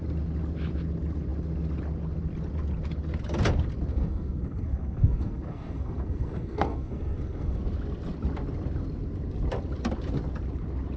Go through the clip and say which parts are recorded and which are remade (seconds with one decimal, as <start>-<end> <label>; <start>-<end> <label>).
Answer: 0.0-3.9 recorded; 3.9-7.6 remade; 7.6-11.0 recorded